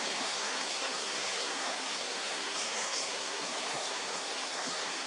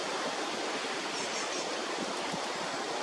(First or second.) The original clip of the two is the second